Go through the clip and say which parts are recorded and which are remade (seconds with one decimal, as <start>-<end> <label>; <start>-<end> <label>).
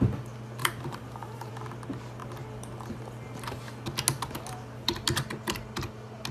0.0-0.6 recorded; 0.6-1.5 remade; 1.5-6.3 recorded